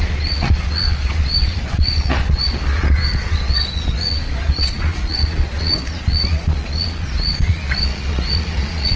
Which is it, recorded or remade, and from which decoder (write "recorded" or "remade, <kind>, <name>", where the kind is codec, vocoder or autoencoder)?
remade, vocoder, Vocos